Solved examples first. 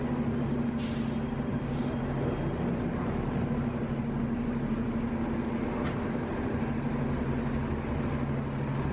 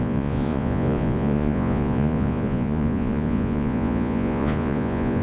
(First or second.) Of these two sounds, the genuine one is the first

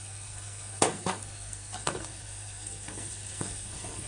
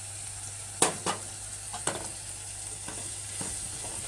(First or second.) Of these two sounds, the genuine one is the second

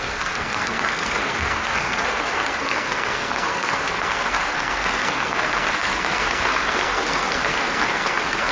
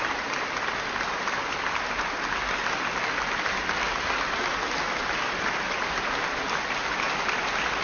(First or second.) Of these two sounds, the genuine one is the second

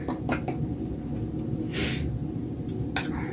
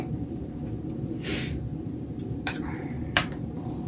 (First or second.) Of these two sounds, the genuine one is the first